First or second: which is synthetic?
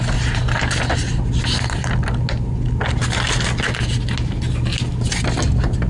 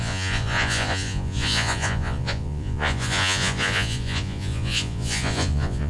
second